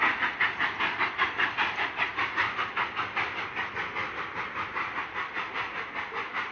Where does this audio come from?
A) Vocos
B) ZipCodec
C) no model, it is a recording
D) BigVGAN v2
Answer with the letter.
C